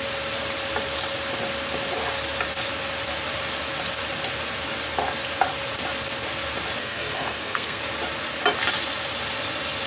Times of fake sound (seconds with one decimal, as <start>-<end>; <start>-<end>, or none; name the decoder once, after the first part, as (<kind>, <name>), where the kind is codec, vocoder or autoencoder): 6.8-7.8 (codec, SNAC)

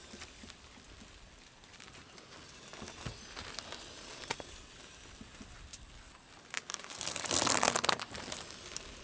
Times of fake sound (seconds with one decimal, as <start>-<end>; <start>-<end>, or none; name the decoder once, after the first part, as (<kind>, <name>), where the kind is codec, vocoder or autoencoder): none

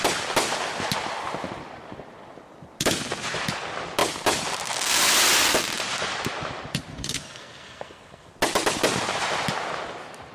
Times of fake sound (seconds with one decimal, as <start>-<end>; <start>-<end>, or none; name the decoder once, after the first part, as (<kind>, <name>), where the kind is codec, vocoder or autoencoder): 6.9-8.3 (codec, SNAC)

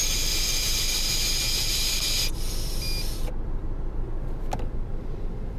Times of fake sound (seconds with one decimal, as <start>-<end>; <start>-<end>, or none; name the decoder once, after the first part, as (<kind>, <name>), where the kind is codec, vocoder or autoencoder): none

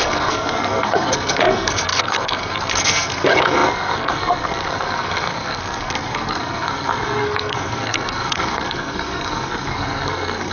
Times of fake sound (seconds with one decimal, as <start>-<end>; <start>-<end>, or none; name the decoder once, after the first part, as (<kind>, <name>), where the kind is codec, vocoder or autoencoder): 0.0-10.5 (codec, SNAC)

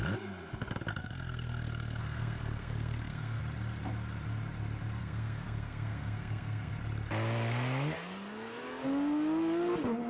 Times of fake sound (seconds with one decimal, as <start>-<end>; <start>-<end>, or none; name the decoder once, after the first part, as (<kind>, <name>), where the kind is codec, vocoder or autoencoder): 1.0-3.4 (codec, SNAC); 5.0-6.7

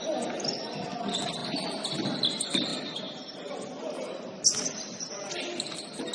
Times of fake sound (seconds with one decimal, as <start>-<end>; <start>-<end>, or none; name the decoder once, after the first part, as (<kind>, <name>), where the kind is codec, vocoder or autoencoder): none